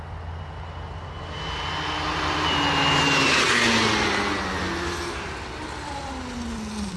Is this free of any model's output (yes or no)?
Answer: yes